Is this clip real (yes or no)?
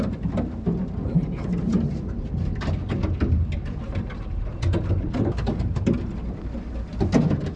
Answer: yes